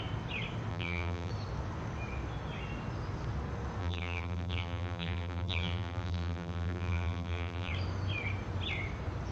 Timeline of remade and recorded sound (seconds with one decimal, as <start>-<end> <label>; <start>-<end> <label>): 0.0-0.7 recorded; 0.7-1.3 remade; 1.3-3.8 recorded; 3.8-7.7 remade; 7.7-9.3 recorded